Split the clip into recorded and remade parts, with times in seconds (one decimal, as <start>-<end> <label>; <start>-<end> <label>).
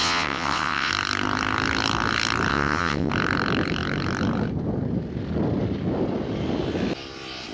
0.0-0.9 remade; 0.9-2.5 recorded; 2.5-3.1 remade; 3.1-7.5 recorded